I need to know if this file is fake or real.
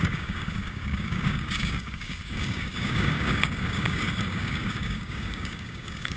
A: fake